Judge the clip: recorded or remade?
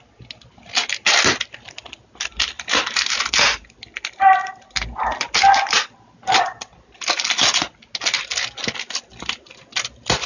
recorded